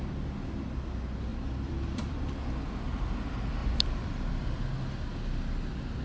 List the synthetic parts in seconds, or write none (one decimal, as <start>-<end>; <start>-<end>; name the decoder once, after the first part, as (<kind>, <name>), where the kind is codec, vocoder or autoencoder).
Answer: 1.3-2.2 (vocoder, BigVGAN v2); 3.6-4.6

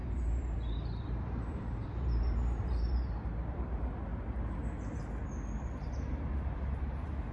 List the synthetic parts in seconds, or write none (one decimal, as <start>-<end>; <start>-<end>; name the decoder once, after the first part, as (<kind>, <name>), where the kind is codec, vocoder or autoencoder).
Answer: 0.0-4.1 (vocoder, BigVGAN v2); 5.6-7.3

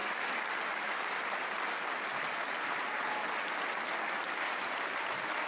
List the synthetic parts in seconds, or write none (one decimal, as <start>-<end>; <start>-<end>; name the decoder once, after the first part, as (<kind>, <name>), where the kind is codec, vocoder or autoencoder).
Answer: none

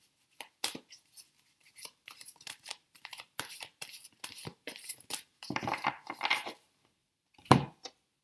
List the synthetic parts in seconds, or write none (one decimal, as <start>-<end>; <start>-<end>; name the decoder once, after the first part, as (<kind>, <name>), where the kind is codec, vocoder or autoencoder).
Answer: 1.6-4.1 (vocoder, BigVGAN v2); 4.5-6.2; 7.0-7.7

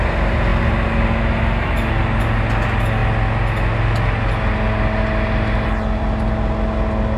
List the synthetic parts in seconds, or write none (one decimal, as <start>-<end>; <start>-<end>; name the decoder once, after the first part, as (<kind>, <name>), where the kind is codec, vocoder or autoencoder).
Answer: none

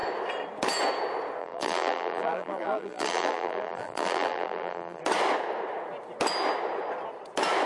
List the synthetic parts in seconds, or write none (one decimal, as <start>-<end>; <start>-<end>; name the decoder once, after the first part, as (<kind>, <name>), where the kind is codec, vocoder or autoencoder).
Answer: 1.4-5.0 (vocoder, BigVGAN v2)

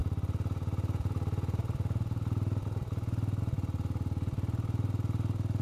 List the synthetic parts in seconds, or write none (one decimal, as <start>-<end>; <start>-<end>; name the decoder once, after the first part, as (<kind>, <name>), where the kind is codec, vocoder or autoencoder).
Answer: none